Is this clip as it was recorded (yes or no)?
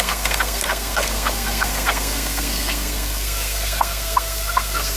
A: no